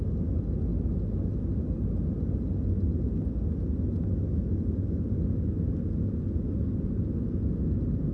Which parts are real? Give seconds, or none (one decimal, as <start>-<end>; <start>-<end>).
0.0-8.1